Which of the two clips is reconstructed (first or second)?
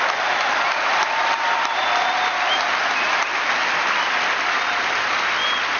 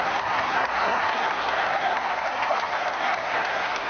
second